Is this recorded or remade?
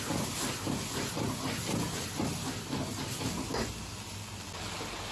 recorded